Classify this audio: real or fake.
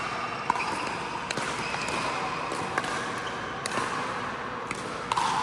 real